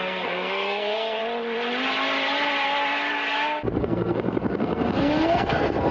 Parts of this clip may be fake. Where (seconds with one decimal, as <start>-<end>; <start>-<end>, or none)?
0.0-1.2; 3.8-5.9